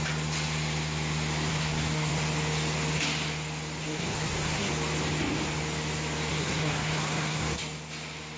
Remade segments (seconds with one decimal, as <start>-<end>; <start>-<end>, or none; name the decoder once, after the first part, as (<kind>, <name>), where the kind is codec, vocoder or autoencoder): 1.5-2.1 (codec, SNAC); 3.8-4.7; 6.3-7.6